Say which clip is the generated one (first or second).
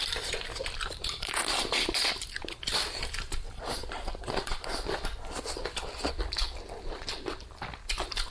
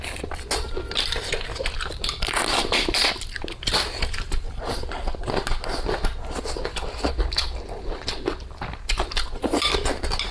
first